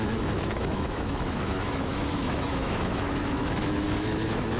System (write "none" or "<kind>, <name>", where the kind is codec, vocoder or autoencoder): autoencoder, DAC-VAE